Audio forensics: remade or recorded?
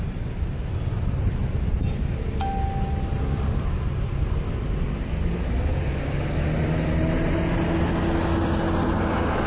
recorded